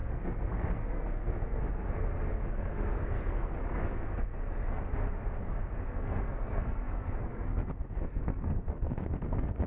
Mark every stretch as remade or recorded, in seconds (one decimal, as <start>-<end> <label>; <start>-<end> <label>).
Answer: 0.0-4.8 remade; 4.8-5.4 recorded; 5.4-9.7 remade